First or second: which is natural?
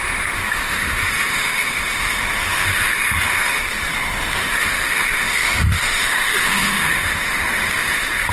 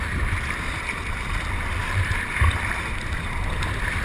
second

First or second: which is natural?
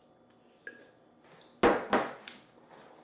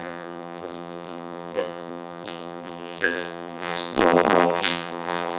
first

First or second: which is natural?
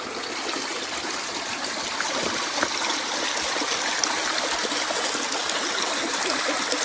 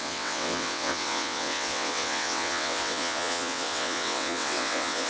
first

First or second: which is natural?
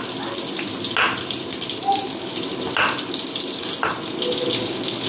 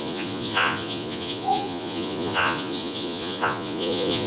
first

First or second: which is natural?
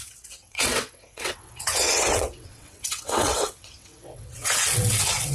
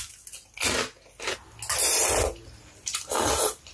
second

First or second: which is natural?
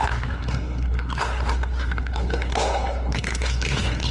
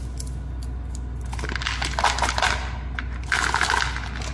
second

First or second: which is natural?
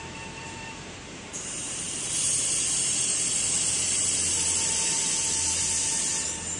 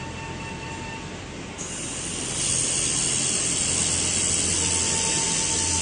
second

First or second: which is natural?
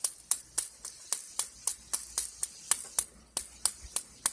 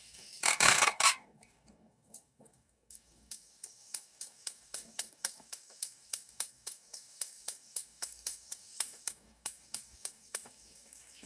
first